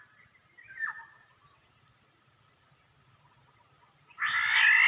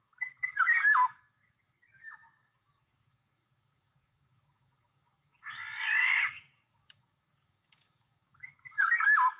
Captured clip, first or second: first